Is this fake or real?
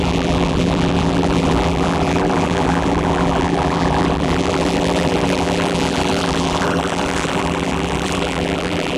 fake